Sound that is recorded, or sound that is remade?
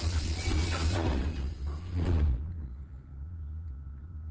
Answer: remade